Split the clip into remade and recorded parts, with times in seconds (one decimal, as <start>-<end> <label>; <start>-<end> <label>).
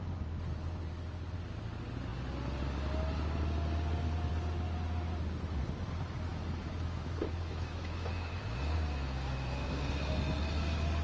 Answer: 0.0-6.3 recorded; 6.3-8.4 remade; 8.4-11.0 recorded